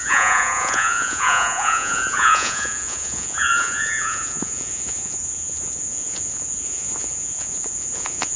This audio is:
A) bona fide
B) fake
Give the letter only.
B